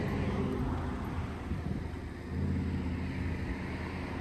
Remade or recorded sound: recorded